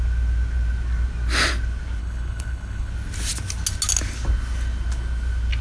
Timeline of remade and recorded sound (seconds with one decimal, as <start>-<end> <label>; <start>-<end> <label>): 0.0-2.0 recorded; 2.0-2.9 remade; 2.9-5.6 recorded